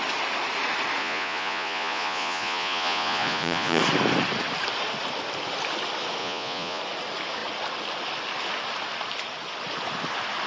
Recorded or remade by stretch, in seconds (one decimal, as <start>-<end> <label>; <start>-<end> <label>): 0.0-1.0 recorded; 1.0-3.8 remade; 3.8-6.2 recorded; 6.2-6.8 remade; 6.8-10.5 recorded